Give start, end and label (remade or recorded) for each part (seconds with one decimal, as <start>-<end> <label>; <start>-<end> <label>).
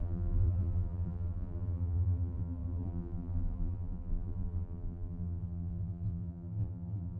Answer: 0.0-7.2 remade